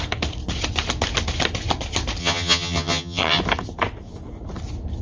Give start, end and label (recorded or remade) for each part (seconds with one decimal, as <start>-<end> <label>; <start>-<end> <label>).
0.0-2.2 recorded; 2.2-3.4 remade; 3.4-5.0 recorded